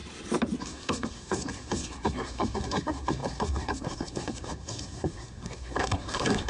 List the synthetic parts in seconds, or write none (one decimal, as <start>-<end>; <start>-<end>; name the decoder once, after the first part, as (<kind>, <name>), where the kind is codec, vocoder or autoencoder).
0.6-6.5 (codec, SNAC)